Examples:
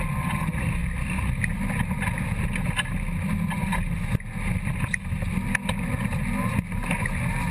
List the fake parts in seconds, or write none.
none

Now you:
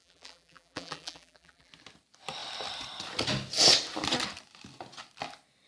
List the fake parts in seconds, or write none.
0.0-1.7

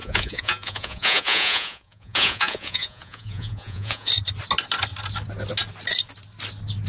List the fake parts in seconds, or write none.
0.0-4.1